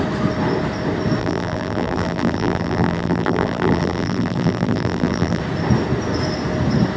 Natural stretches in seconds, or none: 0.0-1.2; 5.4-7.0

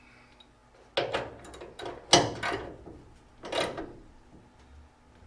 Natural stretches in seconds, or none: 0.0-5.3

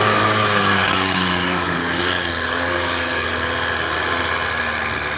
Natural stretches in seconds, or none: 3.3-5.2

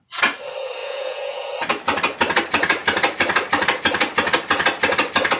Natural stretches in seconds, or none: 0.0-0.8; 1.5-5.4

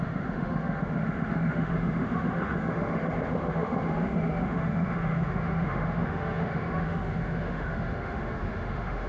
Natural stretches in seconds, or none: none